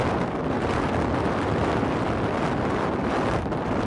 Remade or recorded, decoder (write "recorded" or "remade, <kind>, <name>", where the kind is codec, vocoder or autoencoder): recorded